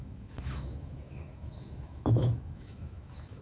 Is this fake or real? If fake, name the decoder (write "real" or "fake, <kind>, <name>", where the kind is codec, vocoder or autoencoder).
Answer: fake, autoencoder, DAC-VAE